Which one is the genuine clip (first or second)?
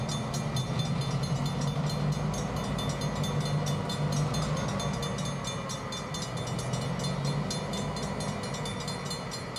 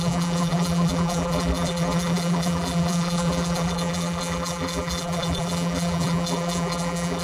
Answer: first